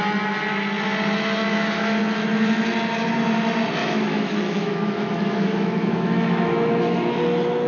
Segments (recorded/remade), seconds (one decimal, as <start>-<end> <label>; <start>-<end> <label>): 0.0-1.4 recorded; 1.4-2.0 remade; 2.0-3.8 recorded; 3.8-7.2 remade; 7.2-7.7 recorded

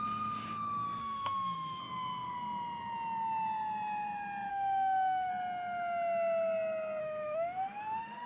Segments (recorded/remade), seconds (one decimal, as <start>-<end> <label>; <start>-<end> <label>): 0.0-1.0 recorded; 1.0-1.8 remade; 1.8-4.5 recorded; 4.5-5.3 remade; 5.3-7.0 recorded; 7.0-8.3 remade

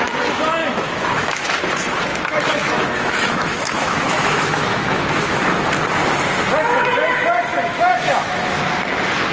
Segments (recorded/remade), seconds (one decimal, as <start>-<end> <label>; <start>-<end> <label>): 0.0-0.6 recorded; 0.6-1.5 remade; 1.5-2.1 recorded; 2.1-5.7 remade; 5.7-7.5 recorded; 7.5-8.7 remade; 8.7-9.3 recorded

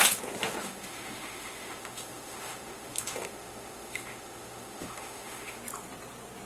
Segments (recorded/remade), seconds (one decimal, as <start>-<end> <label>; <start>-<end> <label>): 0.0-5.6 remade; 5.6-6.5 recorded

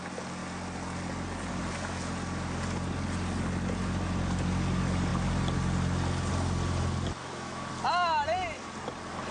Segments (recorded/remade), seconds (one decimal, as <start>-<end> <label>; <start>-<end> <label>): 0.0-7.2 recorded; 7.2-7.7 remade; 7.7-9.3 recorded

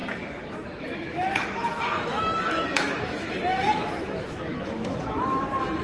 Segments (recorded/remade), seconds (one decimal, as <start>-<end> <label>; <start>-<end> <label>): 0.0-5.8 remade